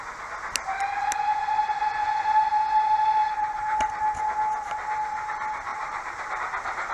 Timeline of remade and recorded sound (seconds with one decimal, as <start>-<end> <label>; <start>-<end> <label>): 0.0-3.2 recorded; 3.2-4.2 remade; 4.2-5.7 recorded; 5.7-6.4 remade; 6.4-6.9 recorded